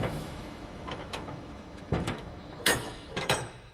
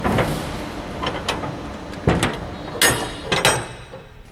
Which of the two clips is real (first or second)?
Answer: second